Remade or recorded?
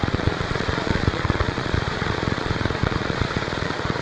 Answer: remade